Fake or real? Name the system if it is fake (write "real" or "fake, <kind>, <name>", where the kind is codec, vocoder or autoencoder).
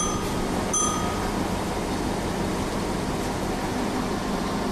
real